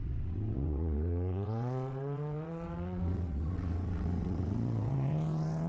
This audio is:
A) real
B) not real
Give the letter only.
B